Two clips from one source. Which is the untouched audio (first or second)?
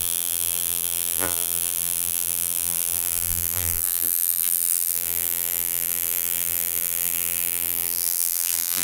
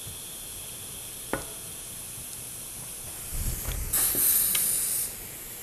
second